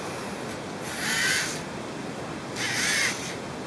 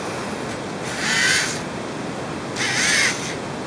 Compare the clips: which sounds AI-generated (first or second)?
first